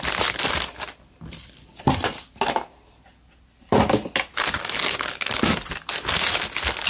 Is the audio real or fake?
real